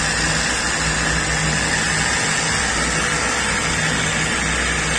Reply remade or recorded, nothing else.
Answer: recorded